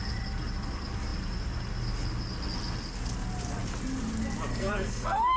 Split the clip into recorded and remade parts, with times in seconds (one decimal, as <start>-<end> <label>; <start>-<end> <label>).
0.0-4.5 recorded; 4.5-5.4 remade